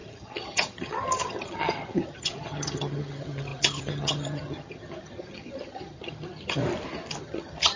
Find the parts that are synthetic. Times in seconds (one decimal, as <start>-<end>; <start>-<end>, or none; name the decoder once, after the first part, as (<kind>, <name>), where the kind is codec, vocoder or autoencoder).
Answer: 0.0-6.6 (vocoder, HiFi-GAN); 7.2-7.8